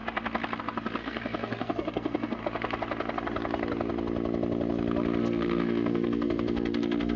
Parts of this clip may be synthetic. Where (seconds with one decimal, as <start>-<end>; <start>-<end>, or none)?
1.0-2.4; 5.2-7.2